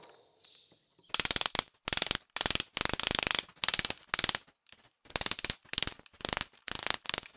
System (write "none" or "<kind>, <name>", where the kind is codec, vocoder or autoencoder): none